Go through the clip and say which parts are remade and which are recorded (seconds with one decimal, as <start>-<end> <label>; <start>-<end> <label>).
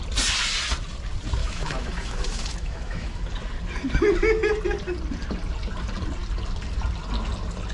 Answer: 0.0-1.4 recorded; 1.4-3.2 remade; 3.2-7.7 recorded